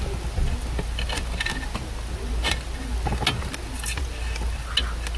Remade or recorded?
recorded